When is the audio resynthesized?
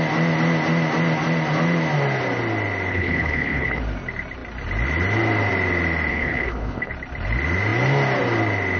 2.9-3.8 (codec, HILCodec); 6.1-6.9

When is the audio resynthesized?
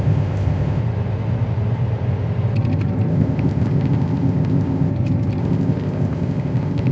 0.0-0.8 (codec, ZipCodec); 3.1-4.9; 5.4-6.9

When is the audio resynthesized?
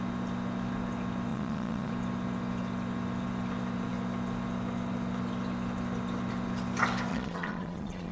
1.3-1.9 (vocoder, Vocos); 7.1-8.1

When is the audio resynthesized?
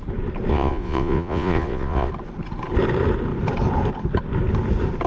0.5-2.1 (vocoder, Vocos)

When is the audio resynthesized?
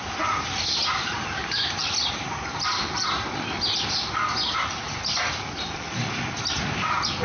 1.8-6.1 (vocoder, BigVGAN v2)